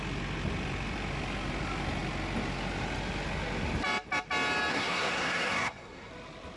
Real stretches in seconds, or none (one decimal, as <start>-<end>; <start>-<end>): 0.0-4.7; 6.1-6.6

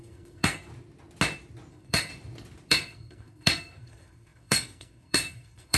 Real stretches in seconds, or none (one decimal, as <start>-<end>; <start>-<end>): 0.7-1.7; 2.1-2.7

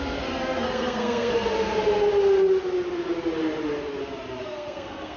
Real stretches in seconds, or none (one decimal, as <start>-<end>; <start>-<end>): 1.3-4.4

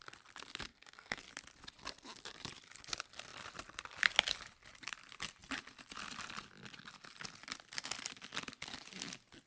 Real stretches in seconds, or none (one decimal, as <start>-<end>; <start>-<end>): 0.0-0.7; 1.2-9.5

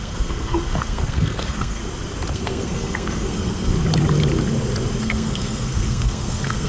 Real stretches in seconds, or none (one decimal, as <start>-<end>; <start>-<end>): 1.8-2.3; 3.7-5.0

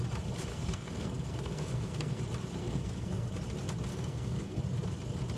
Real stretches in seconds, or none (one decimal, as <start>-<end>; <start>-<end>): 0.0-0.5; 2.2-2.6; 3.3-3.9; 4.6-5.4

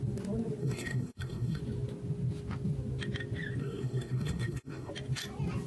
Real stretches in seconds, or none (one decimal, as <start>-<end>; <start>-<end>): 0.0-0.6; 1.6-3.6; 4.9-5.7

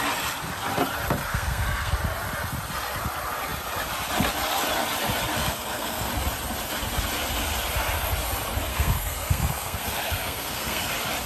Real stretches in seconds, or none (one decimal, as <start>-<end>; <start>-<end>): 0.0-1.3; 1.9-5.4; 6.1-8.7; 10.9-11.3